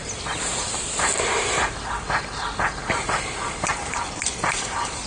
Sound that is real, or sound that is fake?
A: real